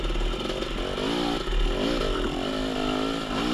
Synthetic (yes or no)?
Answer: no